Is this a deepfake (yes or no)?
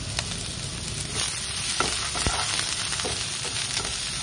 no